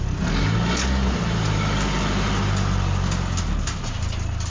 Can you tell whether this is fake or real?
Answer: real